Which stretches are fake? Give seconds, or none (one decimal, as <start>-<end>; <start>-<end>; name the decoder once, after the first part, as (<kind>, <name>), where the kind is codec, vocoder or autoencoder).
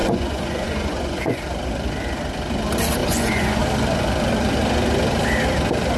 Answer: 0.0-1.4 (vocoder, Vocos); 3.0-3.6